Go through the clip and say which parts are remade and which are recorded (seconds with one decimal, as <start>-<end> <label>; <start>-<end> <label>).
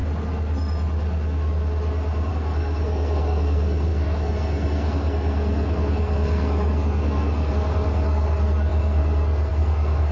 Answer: 0.0-2.3 recorded; 2.3-10.1 remade